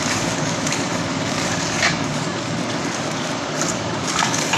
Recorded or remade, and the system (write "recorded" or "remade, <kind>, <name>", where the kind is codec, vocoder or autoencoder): remade, codec, DAC